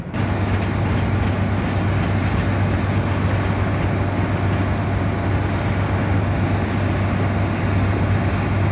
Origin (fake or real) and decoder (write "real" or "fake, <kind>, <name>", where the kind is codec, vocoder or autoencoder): real